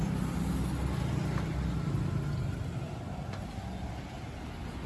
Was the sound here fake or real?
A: real